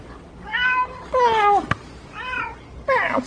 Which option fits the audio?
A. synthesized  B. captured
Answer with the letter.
B